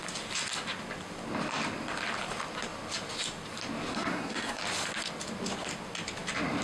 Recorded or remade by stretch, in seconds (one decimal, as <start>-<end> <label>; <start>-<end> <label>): 0.0-3.9 recorded; 3.9-4.6 remade; 4.6-6.6 recorded

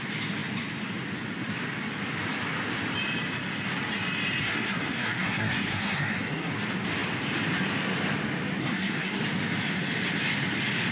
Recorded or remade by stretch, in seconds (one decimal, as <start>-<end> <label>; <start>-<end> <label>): 0.0-4.4 recorded; 4.4-6.5 remade; 6.5-8.6 recorded; 8.6-9.2 remade; 9.2-10.9 recorded

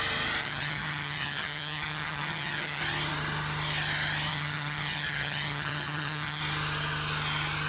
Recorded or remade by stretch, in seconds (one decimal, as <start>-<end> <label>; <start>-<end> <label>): 0.0-0.4 recorded; 0.4-2.8 remade; 2.8-4.3 recorded; 4.3-6.4 remade; 6.4-7.7 recorded

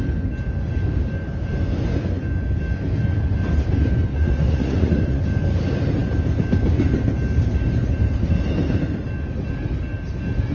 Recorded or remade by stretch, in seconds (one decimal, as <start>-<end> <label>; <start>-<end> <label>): 0.0-4.1 recorded; 4.1-5.2 remade; 5.2-10.5 recorded

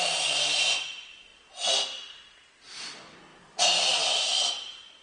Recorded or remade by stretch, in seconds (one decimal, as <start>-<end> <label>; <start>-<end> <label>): 0.0-5.0 recorded

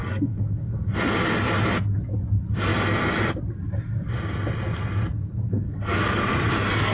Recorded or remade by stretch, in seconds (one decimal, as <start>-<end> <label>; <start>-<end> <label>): 0.0-0.9 remade; 0.9-5.1 recorded; 5.1-6.2 remade; 6.2-6.9 recorded